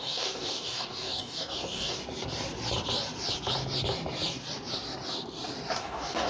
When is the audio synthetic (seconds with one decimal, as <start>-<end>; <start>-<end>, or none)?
0.0-2.0; 5.8-6.3